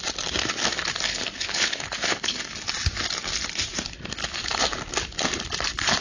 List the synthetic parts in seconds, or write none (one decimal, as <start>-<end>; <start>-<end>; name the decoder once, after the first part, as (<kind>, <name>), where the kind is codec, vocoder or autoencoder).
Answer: 1.1-2.4 (codec, HILCodec)